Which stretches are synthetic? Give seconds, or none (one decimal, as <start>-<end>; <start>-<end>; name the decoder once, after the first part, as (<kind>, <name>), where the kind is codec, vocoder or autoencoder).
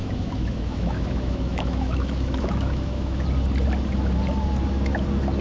0.0-3.2 (autoencoder, DAC-VAE)